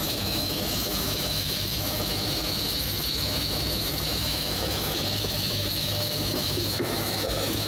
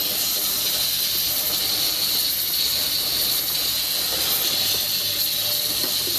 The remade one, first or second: first